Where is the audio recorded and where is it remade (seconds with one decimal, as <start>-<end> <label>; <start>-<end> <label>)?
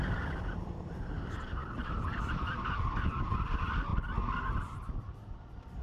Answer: 0.0-3.9 remade; 3.9-4.6 recorded; 4.6-5.8 remade